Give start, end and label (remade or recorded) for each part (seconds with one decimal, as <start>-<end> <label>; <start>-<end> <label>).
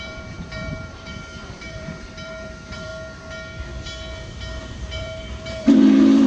0.0-2.9 remade; 2.9-4.6 recorded; 4.6-6.3 remade